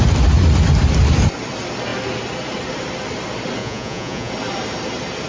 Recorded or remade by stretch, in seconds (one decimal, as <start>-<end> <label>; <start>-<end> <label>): 0.0-3.6 recorded; 3.6-4.3 remade; 4.3-5.3 recorded